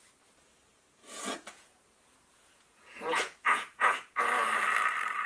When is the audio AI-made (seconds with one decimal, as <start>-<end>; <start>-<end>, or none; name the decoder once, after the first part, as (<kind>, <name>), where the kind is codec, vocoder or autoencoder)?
1.0-4.2 (vocoder, Vocos)